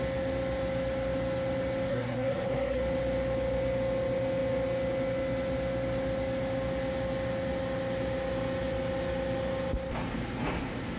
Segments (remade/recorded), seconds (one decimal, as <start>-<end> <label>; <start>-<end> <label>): 0.0-1.9 recorded; 1.9-2.8 remade; 2.8-11.0 recorded